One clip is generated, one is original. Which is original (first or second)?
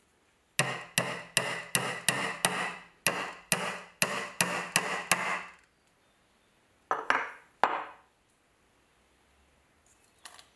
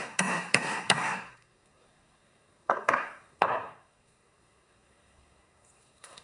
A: first